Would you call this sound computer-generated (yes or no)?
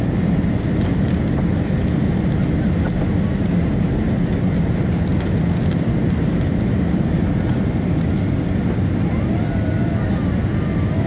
no